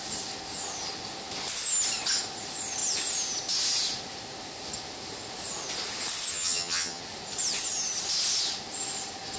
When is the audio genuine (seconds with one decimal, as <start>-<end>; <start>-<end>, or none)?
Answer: 0.0-6.3; 7.0-9.4